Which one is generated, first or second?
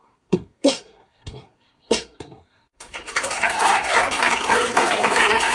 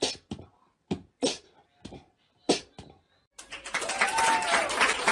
first